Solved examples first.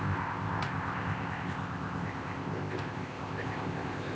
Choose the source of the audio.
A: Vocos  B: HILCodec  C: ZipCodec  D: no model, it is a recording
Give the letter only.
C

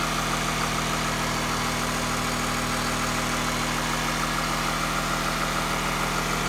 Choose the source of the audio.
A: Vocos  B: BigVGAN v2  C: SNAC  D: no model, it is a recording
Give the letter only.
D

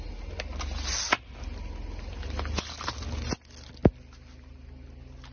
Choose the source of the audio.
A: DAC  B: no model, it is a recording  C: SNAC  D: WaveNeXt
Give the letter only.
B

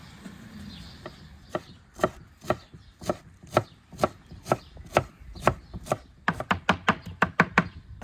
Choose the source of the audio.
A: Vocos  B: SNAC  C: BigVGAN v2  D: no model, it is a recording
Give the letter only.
C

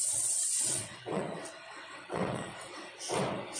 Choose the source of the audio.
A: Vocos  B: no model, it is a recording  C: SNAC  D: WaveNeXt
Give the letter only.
D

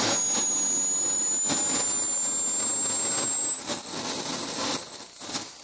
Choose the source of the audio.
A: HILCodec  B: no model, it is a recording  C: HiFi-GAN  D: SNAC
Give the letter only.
B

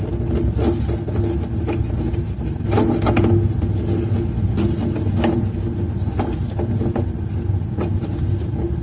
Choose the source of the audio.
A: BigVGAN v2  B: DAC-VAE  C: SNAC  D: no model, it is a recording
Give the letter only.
D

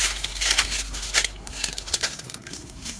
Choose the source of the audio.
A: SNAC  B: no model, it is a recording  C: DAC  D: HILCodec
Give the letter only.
A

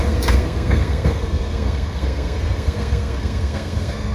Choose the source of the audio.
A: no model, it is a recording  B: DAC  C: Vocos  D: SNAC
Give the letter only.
D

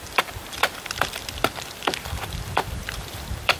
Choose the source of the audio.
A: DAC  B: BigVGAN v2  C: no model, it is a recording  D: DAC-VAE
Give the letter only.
B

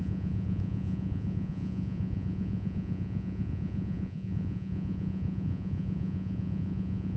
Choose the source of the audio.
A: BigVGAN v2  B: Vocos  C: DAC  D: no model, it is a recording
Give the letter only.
B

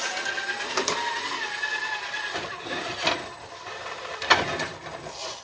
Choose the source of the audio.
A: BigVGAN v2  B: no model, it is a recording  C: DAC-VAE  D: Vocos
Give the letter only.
B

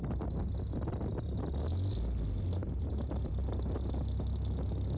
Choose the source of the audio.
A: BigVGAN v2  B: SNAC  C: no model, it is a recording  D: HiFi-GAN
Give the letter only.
C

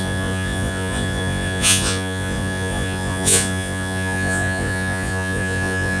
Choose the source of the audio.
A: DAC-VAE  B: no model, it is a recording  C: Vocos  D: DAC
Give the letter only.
C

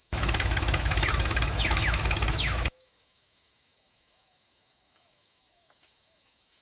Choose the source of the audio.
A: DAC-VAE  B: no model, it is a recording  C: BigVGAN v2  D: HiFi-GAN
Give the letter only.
A